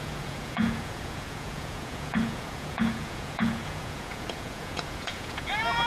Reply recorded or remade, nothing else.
remade